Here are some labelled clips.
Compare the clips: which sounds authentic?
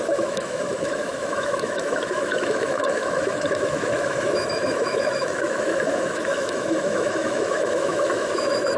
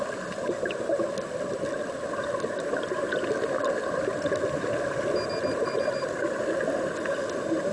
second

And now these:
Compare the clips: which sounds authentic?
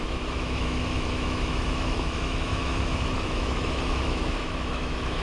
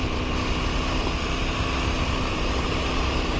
second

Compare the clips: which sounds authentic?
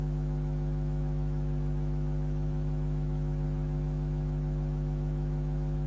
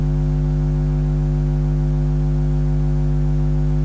second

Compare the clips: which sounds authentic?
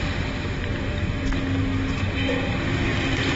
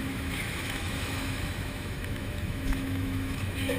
first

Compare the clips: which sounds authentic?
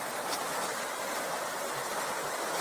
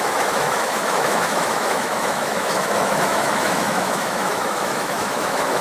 first